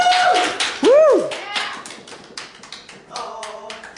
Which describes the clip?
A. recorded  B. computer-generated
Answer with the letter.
A